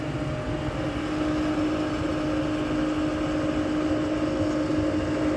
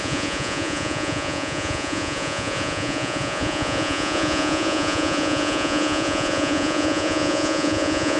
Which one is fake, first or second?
second